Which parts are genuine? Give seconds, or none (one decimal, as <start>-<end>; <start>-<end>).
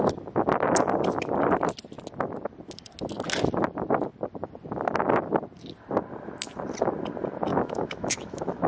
0.0-7.5